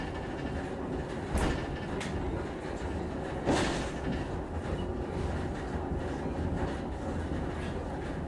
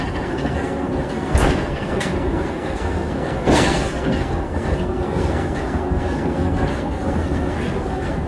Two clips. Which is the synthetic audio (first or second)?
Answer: second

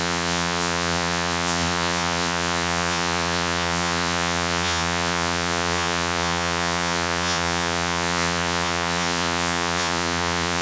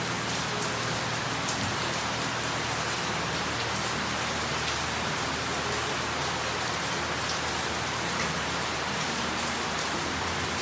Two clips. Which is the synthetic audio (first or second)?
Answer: first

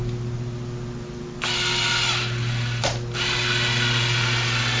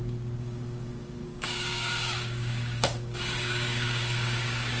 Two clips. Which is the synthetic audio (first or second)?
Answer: second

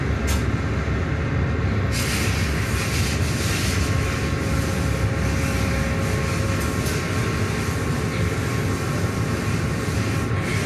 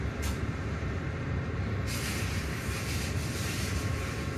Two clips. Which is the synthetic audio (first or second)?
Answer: second